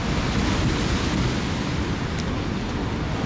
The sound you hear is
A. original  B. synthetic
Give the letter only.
A